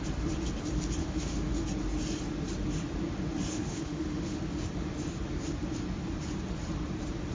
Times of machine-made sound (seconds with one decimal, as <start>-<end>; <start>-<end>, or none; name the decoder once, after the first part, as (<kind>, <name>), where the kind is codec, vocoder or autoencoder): 1.0-1.5 (autoencoder, DAC-VAE); 3.5-4.4